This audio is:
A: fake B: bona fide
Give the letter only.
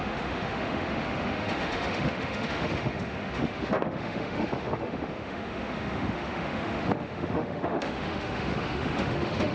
A